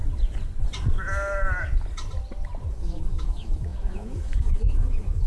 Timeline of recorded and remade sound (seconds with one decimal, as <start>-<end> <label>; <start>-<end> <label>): 0.0-2.7 recorded; 2.7-5.3 remade